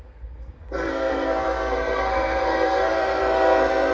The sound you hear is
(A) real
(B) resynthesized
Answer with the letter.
B